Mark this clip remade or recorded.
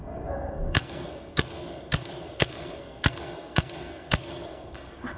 remade